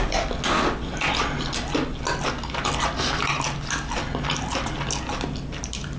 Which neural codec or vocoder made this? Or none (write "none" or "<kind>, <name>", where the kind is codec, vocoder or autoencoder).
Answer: none